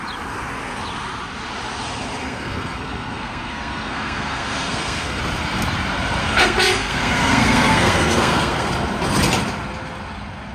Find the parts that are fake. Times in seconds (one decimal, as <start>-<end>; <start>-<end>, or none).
2.2-5.2; 6.2-8.7